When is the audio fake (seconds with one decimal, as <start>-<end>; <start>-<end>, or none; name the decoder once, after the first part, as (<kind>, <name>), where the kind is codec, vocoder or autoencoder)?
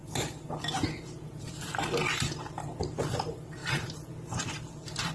0.0-5.1 (vocoder, BigVGAN v2)